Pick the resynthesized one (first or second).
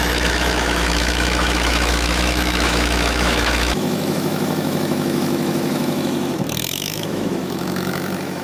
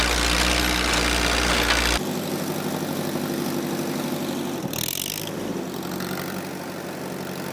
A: first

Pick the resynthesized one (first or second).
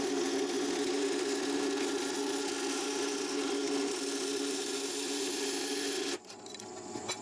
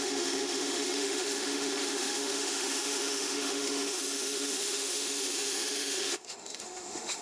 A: second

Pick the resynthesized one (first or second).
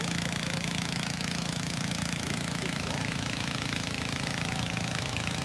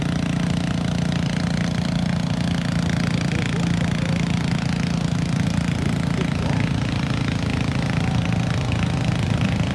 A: first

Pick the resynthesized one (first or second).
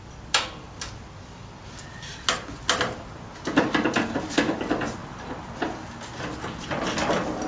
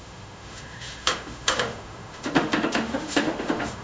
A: second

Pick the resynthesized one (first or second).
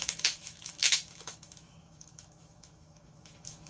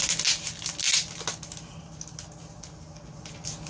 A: first